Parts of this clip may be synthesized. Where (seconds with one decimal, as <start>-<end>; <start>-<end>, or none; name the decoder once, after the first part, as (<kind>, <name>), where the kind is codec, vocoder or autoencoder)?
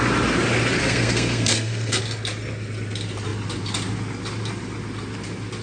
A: 0.8-2.0 (codec, SNAC)